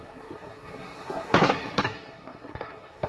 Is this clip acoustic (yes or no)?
no